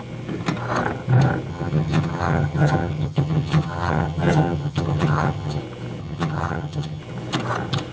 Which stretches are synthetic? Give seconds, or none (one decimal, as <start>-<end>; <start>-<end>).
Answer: 1.5-5.6; 6.0-7.0